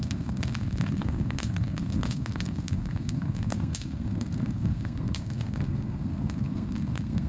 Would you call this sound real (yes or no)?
no